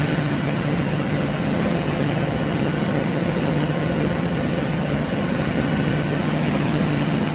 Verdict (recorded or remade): remade